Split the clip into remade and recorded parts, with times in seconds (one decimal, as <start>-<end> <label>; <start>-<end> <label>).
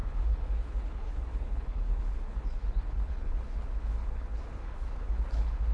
0.0-5.7 remade